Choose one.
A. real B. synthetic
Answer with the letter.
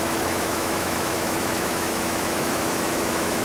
B